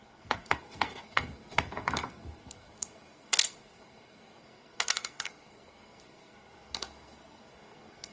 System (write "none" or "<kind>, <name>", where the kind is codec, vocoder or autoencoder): codec, SNAC